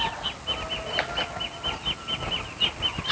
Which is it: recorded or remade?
recorded